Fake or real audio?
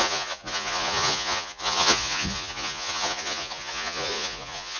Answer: fake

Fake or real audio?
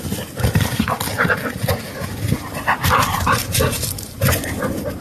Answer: real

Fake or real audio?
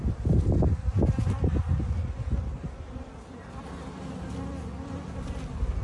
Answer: real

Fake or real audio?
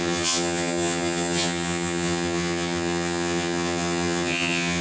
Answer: fake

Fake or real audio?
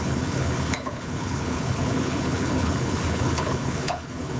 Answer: fake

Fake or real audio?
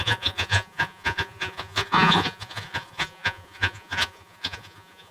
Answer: fake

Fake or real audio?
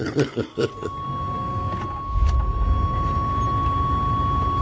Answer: real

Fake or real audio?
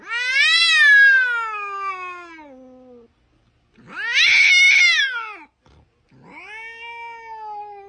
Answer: real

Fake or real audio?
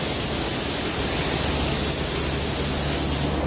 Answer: real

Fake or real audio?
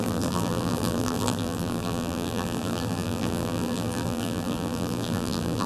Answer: fake